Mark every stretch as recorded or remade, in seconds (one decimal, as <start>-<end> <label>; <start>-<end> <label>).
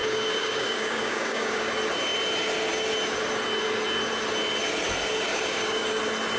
0.0-1.7 remade; 1.7-5.3 recorded; 5.3-6.0 remade; 6.0-6.4 recorded